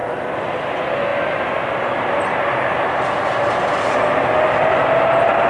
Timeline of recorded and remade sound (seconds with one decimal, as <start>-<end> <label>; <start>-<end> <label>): 0.0-5.5 recorded